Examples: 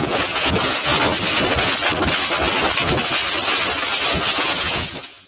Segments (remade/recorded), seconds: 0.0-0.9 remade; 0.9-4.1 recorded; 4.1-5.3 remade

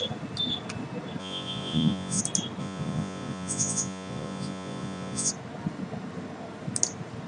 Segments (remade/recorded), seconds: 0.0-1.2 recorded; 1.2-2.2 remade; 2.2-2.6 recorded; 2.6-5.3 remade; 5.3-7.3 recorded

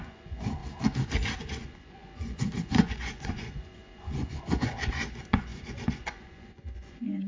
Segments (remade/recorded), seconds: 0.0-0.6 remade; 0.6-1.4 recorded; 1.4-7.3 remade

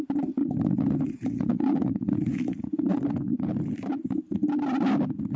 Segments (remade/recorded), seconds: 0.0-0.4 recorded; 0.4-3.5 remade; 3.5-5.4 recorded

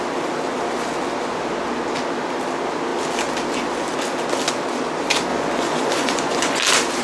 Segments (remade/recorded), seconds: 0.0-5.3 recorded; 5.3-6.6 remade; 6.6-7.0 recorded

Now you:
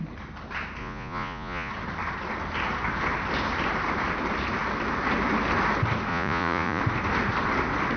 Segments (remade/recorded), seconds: 0.0-0.8 recorded; 0.8-1.7 remade; 1.7-6.1 recorded; 6.1-6.8 remade; 6.8-8.0 recorded

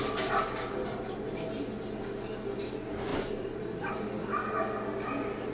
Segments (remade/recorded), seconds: 0.0-5.5 recorded